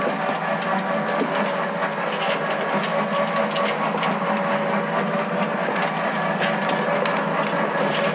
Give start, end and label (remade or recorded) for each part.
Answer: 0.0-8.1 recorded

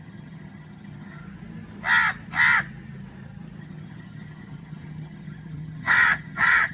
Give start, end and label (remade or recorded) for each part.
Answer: 0.0-1.2 remade; 1.2-3.6 recorded; 3.6-6.7 remade

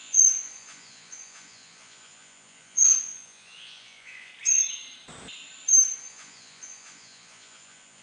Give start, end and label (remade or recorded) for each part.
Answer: 0.0-4.3 remade; 4.3-6.0 recorded; 6.0-8.0 remade

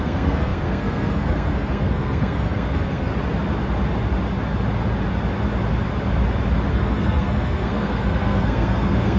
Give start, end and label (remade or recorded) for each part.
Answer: 0.0-3.1 remade; 3.1-6.7 recorded; 6.7-9.2 remade

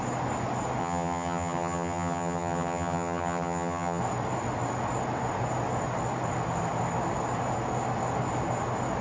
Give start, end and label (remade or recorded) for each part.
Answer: 0.0-0.8 recorded; 0.8-4.0 remade; 4.0-9.0 recorded

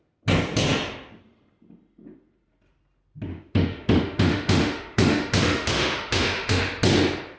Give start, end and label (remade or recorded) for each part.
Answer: 0.0-3.3 recorded; 3.3-6.6 remade; 6.6-7.4 recorded